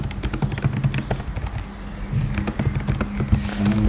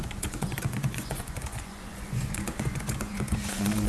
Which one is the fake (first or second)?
second